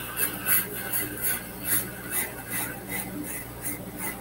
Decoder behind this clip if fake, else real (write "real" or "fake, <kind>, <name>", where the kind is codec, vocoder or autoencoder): real